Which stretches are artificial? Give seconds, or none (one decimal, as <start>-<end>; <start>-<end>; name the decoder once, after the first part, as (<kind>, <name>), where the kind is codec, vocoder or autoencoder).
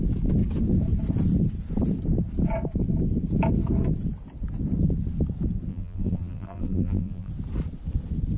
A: 5.7-7.3 (vocoder, BigVGAN v2)